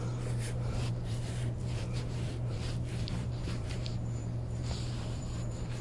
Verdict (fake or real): fake